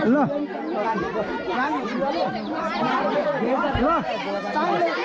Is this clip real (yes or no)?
yes